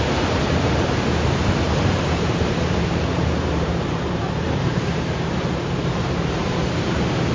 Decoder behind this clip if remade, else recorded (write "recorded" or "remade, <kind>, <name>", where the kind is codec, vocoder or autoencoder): remade, vocoder, BigVGAN v2